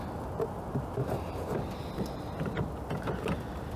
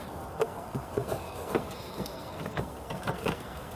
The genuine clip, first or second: first